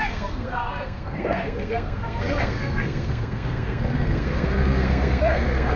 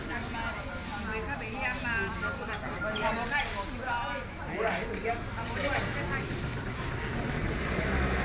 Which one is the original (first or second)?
second